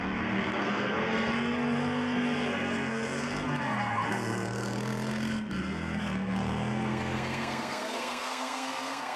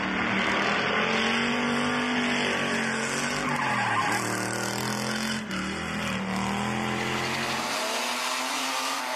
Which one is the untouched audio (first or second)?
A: second